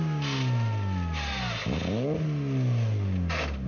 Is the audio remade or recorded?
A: recorded